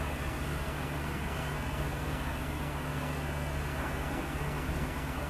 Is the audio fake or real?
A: fake